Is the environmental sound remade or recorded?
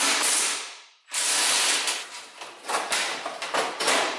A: recorded